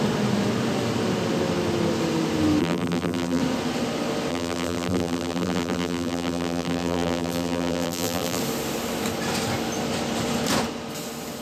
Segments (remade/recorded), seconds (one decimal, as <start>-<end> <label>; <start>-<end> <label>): 0.0-2.6 recorded; 2.6-3.4 remade; 3.4-4.3 recorded; 4.3-8.4 remade; 8.4-11.4 recorded